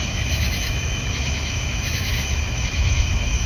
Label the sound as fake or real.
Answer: fake